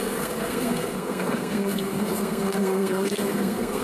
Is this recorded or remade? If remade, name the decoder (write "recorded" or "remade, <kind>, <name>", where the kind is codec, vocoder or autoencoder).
remade, codec, SNAC